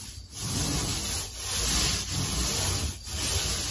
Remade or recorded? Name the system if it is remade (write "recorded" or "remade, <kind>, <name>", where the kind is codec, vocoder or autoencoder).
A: recorded